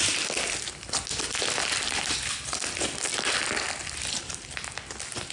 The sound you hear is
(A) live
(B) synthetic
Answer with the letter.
A